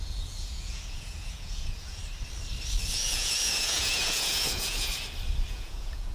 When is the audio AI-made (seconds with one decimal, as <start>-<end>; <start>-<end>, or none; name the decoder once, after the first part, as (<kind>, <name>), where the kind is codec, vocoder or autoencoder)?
0.0-2.0 (vocoder, Vocos); 2.9-4.9; 5.5-6.1